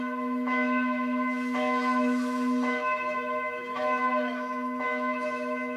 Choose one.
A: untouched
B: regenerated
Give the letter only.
B